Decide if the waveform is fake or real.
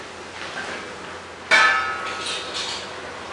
real